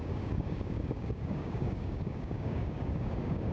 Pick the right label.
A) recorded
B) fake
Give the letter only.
B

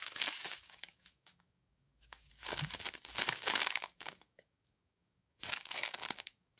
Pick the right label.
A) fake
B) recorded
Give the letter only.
A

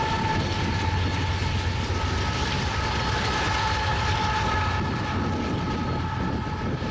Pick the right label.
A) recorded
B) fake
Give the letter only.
A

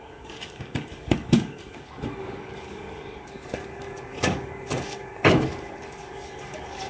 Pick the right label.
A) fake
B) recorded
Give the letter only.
A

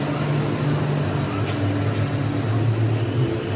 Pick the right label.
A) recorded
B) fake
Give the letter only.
A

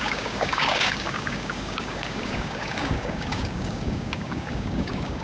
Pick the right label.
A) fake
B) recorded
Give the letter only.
A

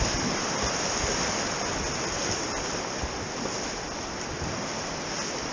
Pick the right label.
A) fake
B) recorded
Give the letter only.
B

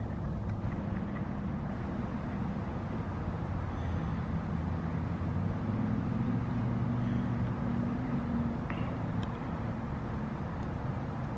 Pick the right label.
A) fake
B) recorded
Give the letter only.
B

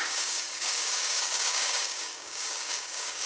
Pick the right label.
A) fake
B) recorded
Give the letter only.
A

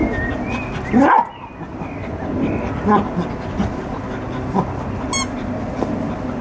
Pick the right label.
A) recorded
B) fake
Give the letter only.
A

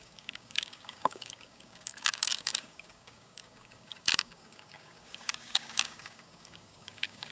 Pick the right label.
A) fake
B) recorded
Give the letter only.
A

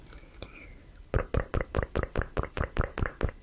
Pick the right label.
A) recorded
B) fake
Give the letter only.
A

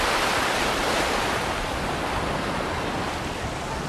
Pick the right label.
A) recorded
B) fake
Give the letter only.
A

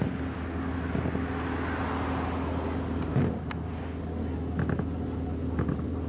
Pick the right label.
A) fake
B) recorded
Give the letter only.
B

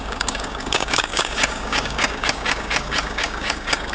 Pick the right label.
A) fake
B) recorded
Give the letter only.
A